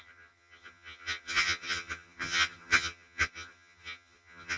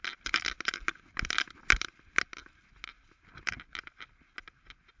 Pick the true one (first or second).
second